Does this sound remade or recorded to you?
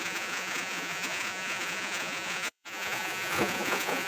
remade